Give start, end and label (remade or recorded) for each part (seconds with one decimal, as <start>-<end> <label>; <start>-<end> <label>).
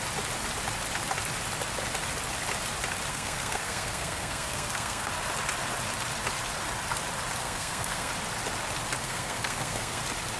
0.0-3.1 recorded; 3.1-5.1 remade; 5.1-7.4 recorded; 7.4-8.1 remade; 8.1-9.0 recorded; 9.0-10.0 remade; 10.0-10.4 recorded